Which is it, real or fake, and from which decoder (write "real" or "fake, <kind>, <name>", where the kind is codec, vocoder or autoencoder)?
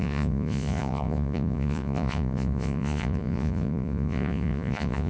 fake, vocoder, Vocos